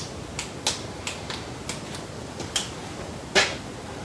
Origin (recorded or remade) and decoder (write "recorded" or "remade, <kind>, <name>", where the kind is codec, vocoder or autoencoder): recorded